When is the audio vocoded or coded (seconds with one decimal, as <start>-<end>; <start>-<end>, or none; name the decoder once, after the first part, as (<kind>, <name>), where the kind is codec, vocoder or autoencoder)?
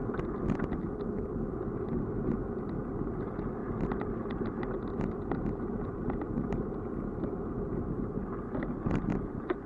0.0-1.0 (vocoder, BigVGAN v2); 3.6-7.6; 9.1-9.7